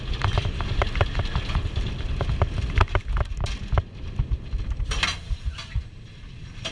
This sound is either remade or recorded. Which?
recorded